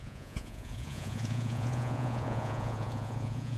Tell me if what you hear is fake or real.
fake